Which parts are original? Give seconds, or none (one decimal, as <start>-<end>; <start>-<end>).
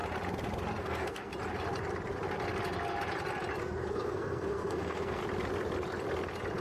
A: 0.0-0.8; 1.3-3.6; 5.2-6.6